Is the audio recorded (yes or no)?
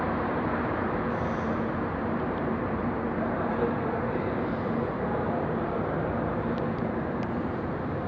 no